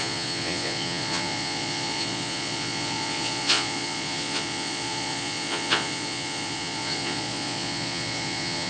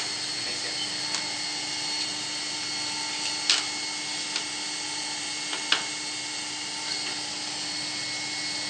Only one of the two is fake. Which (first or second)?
first